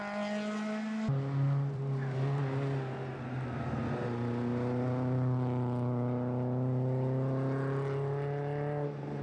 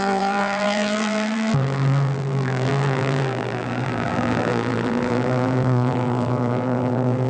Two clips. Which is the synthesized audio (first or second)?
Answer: second